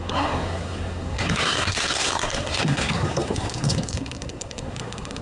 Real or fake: fake